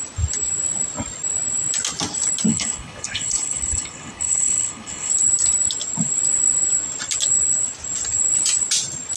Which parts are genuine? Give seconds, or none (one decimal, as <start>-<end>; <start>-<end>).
0.0-2.5; 5.1-9.2